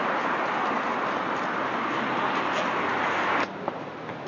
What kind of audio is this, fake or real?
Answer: real